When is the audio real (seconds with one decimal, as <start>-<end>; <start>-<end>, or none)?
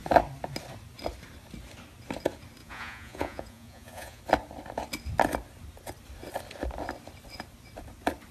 0.0-2.6; 4.2-8.3